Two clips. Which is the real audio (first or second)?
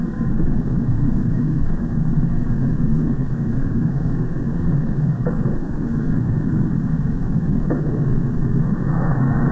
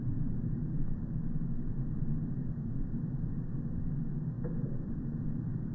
second